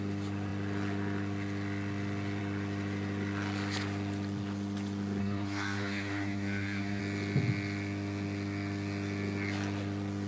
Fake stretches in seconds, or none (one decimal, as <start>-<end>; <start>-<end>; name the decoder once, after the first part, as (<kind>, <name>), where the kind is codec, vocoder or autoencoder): 5.2-7.0 (codec, SNAC)